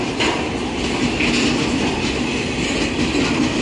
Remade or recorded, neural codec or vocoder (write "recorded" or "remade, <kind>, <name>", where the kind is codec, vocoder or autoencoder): recorded